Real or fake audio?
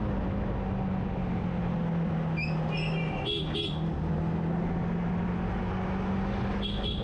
real